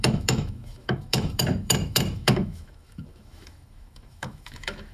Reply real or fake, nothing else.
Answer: fake